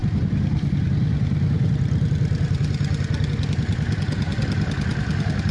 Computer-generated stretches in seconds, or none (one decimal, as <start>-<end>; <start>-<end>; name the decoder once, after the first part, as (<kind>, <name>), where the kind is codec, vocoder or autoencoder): none